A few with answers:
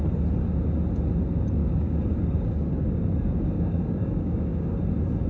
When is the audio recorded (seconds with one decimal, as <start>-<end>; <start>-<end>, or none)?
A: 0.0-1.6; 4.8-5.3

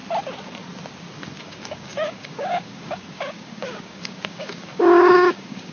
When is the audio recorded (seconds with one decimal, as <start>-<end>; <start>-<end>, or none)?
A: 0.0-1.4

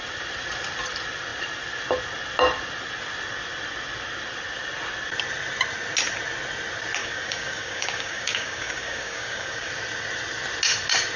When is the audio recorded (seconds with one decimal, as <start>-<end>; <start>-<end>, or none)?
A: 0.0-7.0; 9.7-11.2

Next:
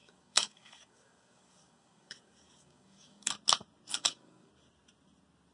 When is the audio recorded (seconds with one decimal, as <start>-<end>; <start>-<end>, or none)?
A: 3.3-3.9; 4.5-5.5

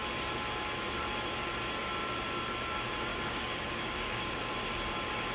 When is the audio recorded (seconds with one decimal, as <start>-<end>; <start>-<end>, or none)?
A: 0.0-3.1; 4.4-5.3